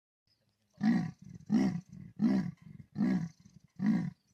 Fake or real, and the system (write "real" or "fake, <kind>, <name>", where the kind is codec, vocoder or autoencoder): real